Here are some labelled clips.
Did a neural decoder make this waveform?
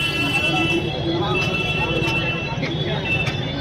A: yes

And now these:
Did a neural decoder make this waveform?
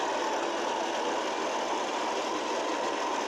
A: no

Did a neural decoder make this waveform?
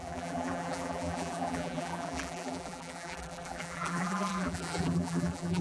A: yes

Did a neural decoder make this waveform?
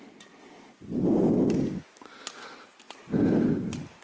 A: no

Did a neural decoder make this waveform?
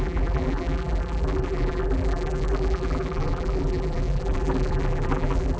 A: yes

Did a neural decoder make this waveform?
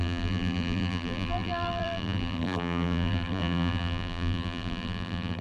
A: yes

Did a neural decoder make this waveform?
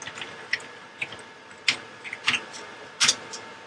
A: no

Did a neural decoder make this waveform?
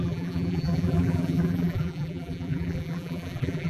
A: yes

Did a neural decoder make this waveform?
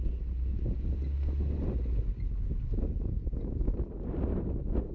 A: no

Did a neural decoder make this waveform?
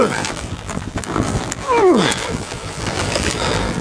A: yes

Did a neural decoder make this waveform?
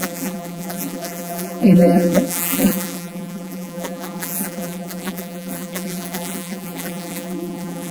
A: yes